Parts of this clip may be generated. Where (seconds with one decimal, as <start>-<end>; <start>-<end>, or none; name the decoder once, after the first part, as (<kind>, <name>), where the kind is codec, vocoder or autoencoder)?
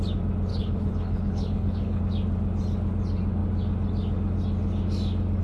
0.5-2.0 (codec, HILCodec)